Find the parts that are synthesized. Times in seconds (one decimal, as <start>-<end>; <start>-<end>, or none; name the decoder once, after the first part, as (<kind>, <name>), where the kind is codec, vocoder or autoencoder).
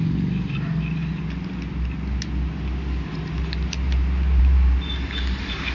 none